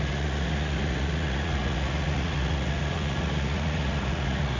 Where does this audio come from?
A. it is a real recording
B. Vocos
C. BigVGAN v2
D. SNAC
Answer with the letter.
B